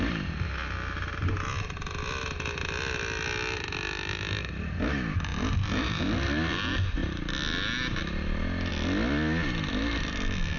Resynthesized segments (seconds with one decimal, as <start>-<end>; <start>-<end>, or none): 5.3-6.1